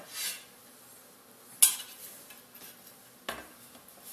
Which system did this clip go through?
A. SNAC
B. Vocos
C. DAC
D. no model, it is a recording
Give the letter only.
D